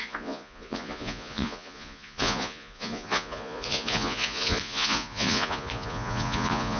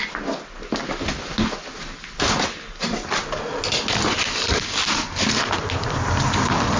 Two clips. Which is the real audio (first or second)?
second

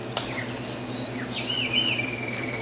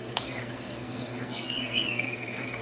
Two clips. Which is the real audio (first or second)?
first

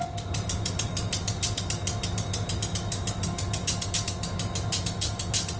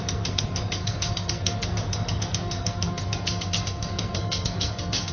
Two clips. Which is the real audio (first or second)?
first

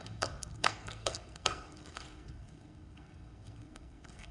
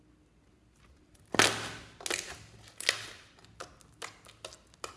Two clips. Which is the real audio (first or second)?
second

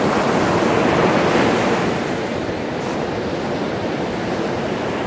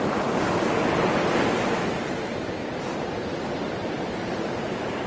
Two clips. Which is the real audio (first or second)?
first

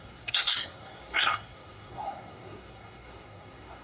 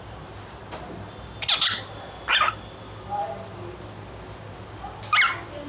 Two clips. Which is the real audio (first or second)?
second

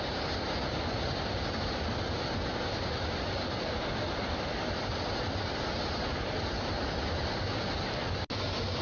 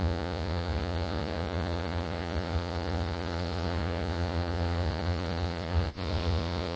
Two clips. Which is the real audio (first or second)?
first